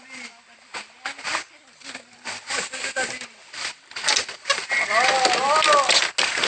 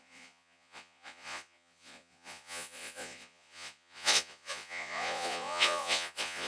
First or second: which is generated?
second